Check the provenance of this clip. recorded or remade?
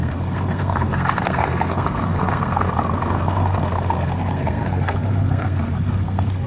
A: remade